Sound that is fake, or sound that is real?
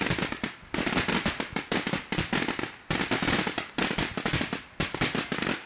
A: real